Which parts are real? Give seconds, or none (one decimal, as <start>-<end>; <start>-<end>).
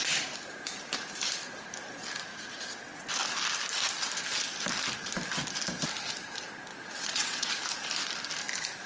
0.0-6.7; 7.5-8.9